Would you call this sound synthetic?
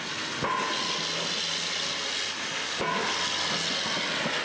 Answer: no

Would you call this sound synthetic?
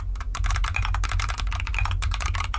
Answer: no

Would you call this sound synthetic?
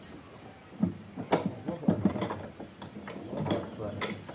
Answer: no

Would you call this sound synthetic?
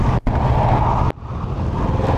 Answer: no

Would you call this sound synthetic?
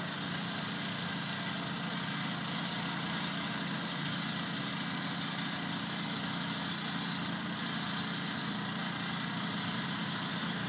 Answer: no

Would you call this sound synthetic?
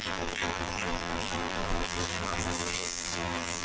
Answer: yes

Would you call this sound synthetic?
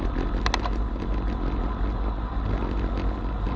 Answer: no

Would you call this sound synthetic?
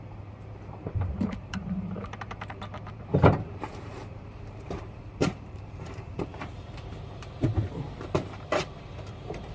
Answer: yes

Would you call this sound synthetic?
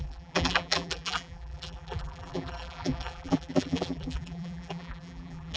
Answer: yes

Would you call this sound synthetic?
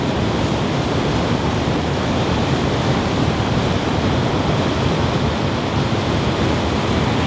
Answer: no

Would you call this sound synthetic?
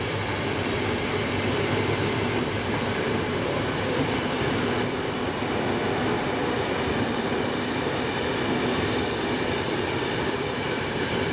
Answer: yes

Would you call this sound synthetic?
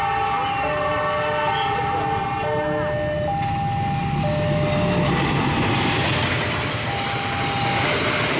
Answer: no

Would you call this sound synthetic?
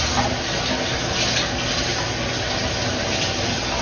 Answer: no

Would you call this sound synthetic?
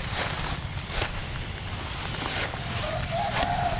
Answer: yes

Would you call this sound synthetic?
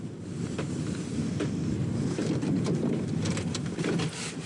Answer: yes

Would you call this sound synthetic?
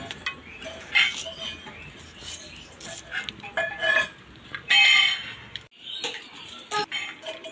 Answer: no